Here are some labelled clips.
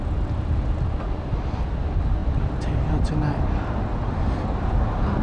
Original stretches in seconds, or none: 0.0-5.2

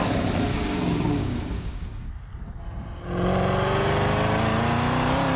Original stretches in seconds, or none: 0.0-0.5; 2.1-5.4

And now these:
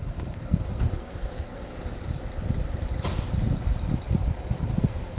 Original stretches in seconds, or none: 1.7-4.8

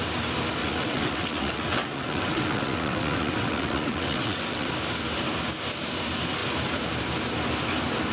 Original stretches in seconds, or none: 0.0-0.6; 4.7-8.1

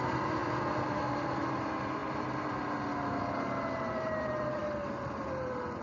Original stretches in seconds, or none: 0.0-5.8

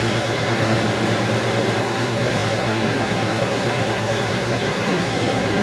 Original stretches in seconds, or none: 0.8-1.8

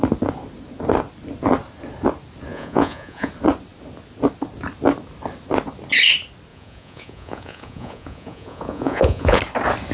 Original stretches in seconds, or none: 0.0-2.5; 3.3-6.5; 9.4-9.9

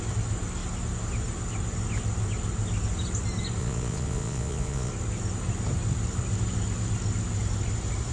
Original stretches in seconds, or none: 0.0-3.6; 4.9-8.1